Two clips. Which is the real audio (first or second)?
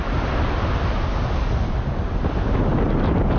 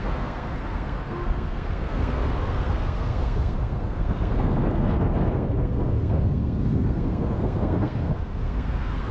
first